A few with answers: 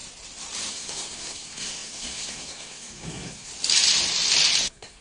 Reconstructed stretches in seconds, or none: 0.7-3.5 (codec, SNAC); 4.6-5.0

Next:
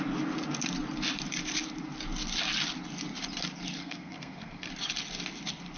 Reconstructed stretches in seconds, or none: 3.8-4.7 (codec, SNAC)

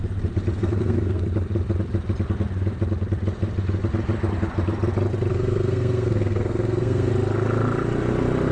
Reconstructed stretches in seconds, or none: 0.6-1.2 (codec, SNAC); 5.3-7.1